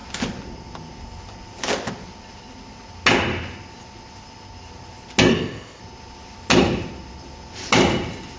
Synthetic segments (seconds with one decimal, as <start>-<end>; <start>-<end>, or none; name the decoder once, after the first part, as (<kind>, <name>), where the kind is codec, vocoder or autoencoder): 5.3-5.8 (codec, ZipCodec)